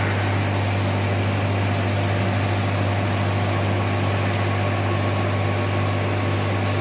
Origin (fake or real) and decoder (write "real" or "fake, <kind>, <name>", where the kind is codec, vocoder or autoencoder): real